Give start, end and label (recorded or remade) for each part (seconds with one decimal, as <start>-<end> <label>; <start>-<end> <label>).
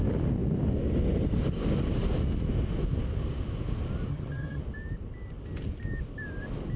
0.0-4.1 recorded; 4.1-4.6 remade; 4.6-6.8 recorded